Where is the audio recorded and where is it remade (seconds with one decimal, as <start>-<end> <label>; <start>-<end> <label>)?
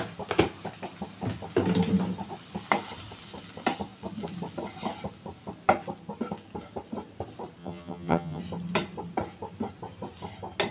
0.0-7.6 recorded; 7.6-8.4 remade; 8.4-10.7 recorded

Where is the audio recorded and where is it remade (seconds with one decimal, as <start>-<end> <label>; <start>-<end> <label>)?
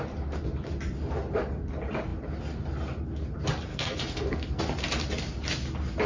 0.0-3.7 recorded; 3.7-4.6 remade; 4.6-6.1 recorded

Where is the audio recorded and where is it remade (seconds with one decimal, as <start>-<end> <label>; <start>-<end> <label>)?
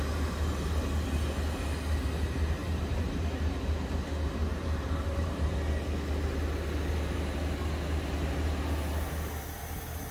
0.0-2.6 recorded; 2.6-3.5 remade; 3.5-4.5 recorded; 4.5-5.4 remade; 5.4-10.1 recorded